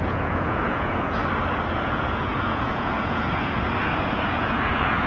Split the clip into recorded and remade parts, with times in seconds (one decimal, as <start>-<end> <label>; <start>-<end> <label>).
0.0-1.2 remade; 1.2-1.7 recorded; 1.7-5.1 remade